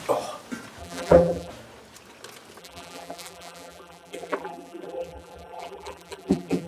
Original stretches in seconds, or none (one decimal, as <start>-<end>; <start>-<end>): 0.0-0.8; 1.5-2.6